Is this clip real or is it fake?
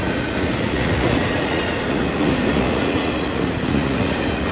fake